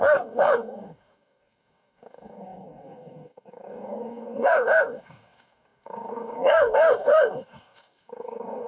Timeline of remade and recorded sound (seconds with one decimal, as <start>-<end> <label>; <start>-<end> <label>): 0.0-8.7 remade